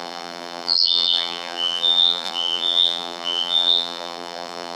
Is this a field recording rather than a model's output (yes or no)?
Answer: no